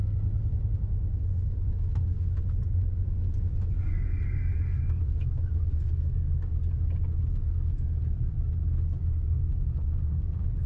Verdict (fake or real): real